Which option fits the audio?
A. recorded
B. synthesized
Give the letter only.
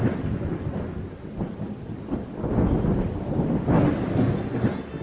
A